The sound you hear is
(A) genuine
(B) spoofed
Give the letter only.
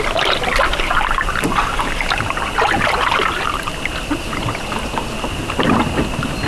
A